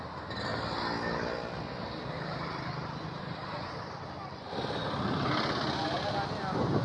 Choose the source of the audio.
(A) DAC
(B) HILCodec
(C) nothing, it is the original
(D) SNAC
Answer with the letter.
C